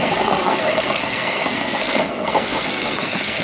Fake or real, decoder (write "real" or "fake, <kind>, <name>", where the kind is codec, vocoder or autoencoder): fake, codec, SNAC